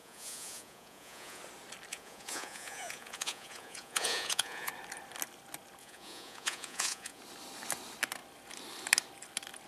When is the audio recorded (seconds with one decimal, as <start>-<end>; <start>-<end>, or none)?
1.4-1.9; 4.7-5.8; 7.2-9.7